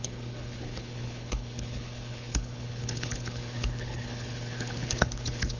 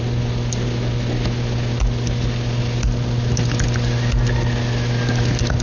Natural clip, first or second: second